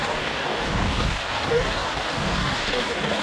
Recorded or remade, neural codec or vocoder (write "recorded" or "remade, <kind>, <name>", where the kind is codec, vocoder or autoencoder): remade, codec, DAC